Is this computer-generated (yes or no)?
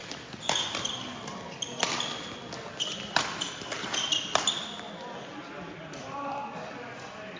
no